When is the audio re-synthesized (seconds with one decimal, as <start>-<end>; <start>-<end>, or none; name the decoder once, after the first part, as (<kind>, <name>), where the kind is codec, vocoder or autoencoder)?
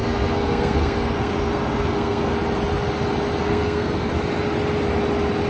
0.0-2.3 (codec, SNAC); 3.4-4.1